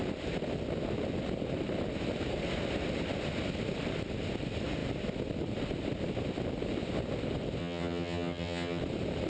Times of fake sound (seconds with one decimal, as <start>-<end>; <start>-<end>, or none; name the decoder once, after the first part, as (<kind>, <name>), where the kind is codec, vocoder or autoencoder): 7.6-8.8 (vocoder, HiFi-GAN)